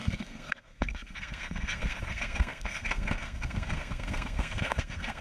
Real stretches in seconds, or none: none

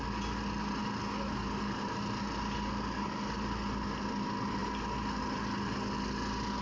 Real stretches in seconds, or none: 0.0-6.6

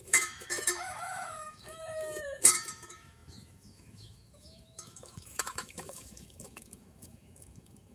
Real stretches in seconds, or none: none

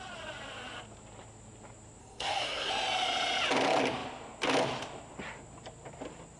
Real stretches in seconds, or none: 0.0-2.0; 2.7-6.4